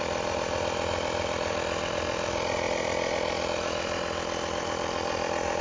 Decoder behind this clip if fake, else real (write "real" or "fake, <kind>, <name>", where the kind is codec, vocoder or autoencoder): real